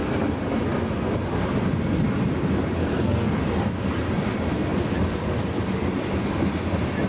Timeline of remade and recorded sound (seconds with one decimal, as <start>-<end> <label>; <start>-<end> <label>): 0.0-2.8 recorded; 2.8-3.4 remade; 3.4-7.1 recorded